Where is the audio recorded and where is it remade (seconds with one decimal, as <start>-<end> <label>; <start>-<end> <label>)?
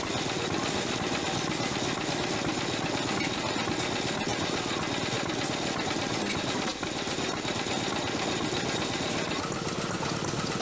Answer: 0.0-10.6 recorded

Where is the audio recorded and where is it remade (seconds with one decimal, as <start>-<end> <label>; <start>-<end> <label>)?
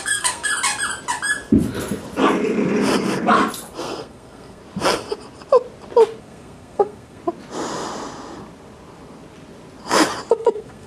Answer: 0.0-0.5 remade; 0.5-3.8 recorded; 3.8-4.6 remade; 4.6-6.2 recorded; 6.2-7.2 remade; 7.2-10.3 recorded; 10.3-10.9 remade